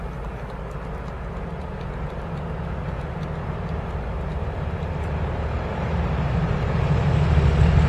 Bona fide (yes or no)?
yes